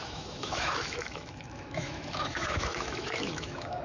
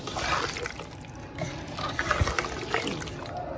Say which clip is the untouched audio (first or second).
second